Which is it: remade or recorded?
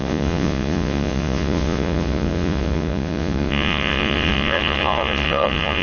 remade